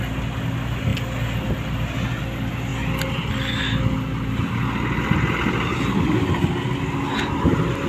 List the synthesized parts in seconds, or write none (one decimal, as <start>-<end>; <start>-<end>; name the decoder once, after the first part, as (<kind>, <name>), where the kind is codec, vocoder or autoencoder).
none